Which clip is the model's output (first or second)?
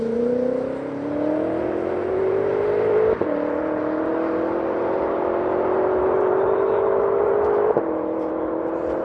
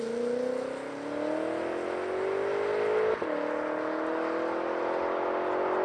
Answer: first